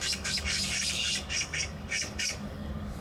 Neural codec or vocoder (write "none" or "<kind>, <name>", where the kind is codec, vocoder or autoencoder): codec, DAC